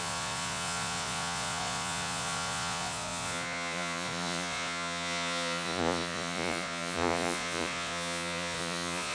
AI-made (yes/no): yes